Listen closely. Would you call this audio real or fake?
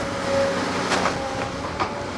real